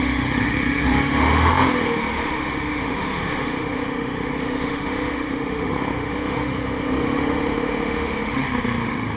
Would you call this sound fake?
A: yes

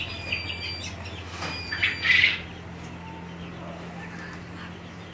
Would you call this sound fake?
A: no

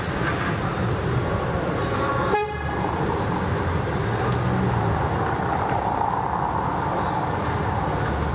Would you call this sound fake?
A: no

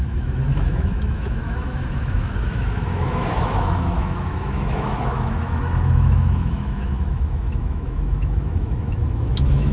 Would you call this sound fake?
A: yes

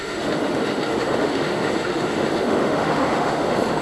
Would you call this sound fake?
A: yes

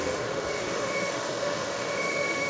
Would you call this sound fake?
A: yes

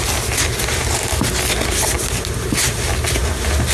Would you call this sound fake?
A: no